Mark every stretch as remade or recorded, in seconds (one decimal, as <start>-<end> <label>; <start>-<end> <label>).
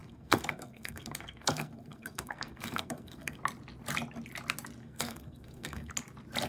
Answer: 0.0-3.4 remade; 3.4-4.8 recorded; 4.8-5.9 remade; 5.9-6.5 recorded